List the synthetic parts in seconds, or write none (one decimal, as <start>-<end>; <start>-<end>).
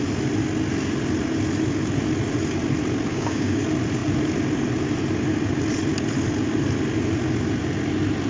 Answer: 3.1-3.6